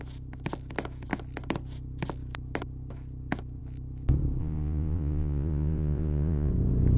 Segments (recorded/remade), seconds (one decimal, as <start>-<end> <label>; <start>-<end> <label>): 0.0-4.4 recorded; 4.4-6.5 remade; 6.5-7.0 recorded